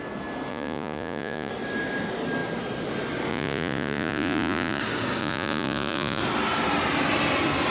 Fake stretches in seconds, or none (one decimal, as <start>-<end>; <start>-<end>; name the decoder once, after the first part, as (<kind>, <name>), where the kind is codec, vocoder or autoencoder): 0.5-1.5 (vocoder, Vocos); 3.3-4.8; 5.2-6.2